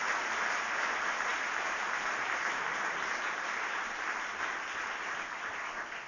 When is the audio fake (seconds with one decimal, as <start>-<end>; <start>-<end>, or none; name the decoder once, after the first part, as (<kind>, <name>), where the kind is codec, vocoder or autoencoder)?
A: none